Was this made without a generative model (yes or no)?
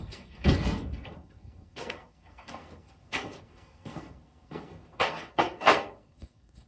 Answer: no